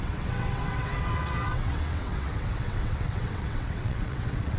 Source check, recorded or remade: remade